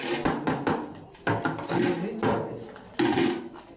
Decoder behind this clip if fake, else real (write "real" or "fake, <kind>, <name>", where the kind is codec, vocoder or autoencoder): real